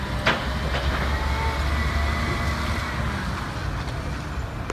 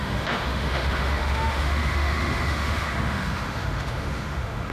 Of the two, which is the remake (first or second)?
second